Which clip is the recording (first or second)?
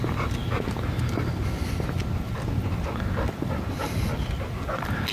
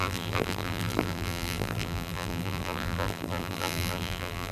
first